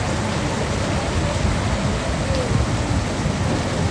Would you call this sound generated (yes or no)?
no